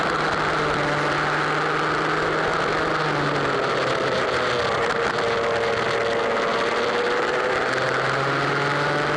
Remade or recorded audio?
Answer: recorded